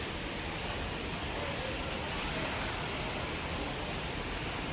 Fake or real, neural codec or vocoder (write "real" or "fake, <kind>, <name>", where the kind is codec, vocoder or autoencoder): real